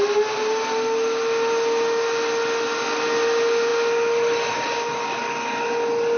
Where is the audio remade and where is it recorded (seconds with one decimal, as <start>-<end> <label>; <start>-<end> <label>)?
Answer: 0.0-6.2 recorded